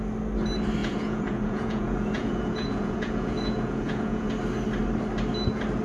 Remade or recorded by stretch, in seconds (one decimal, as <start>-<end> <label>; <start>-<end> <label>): 0.0-0.8 recorded; 0.8-4.3 remade; 4.3-5.8 recorded